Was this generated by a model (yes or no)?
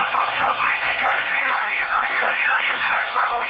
yes